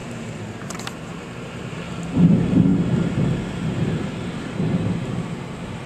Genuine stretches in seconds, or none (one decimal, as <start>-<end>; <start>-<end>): 2.7-3.5